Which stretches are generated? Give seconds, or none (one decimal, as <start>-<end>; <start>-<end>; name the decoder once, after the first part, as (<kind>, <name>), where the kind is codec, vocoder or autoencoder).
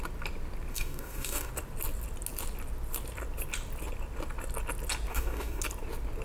0.7-1.5 (codec, DAC); 5.1-5.6